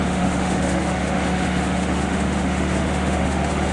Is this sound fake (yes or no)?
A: yes